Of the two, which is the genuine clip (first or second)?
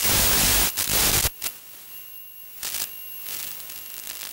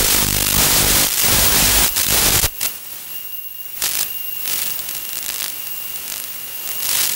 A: first